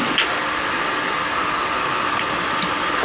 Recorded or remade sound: recorded